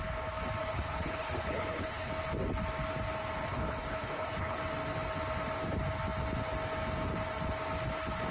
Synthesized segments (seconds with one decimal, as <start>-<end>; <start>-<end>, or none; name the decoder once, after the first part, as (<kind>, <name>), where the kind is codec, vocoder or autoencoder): 0.6-2.1 (codec, HILCodec); 3.4-4.6